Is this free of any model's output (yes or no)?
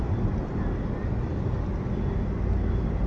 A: yes